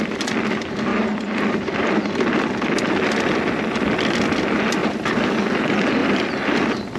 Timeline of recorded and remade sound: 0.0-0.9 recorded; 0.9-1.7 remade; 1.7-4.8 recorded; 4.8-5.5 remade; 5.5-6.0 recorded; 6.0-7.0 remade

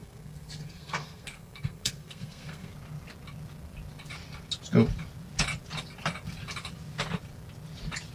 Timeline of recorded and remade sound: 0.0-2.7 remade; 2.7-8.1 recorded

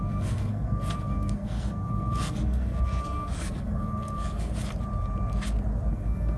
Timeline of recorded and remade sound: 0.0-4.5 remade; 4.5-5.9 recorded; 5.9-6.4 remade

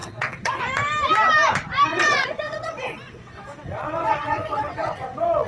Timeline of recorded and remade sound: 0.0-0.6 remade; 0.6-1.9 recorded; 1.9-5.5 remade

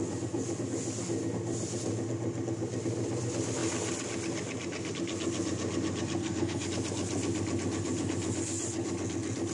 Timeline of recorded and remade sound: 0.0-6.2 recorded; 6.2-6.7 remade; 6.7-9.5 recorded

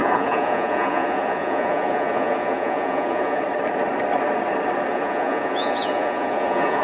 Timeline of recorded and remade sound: 0.0-3.4 remade; 3.4-4.9 recorded; 4.9-6.8 remade

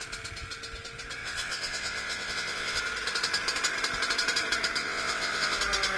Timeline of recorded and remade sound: 0.0-1.2 recorded; 1.2-2.8 remade; 2.8-4.8 recorded; 4.8-5.6 remade; 5.6-6.0 recorded

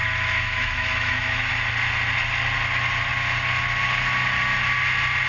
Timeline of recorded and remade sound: 0.0-1.5 remade; 1.5-5.3 recorded